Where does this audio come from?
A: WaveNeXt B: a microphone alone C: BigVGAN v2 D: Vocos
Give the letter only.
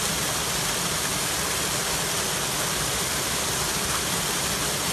B